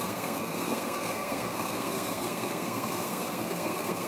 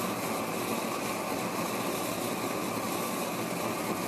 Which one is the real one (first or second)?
second